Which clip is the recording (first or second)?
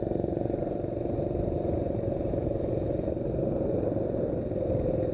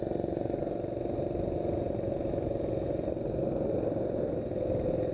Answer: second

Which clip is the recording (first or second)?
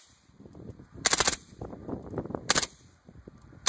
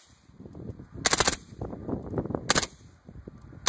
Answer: second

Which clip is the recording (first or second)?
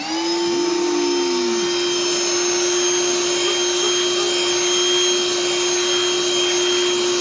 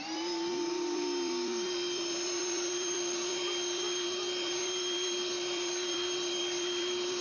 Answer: first